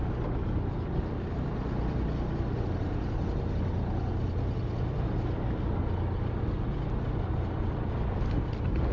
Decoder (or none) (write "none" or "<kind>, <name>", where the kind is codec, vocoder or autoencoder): none